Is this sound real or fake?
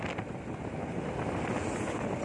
real